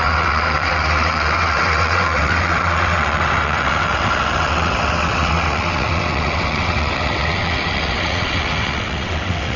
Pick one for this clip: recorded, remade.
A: remade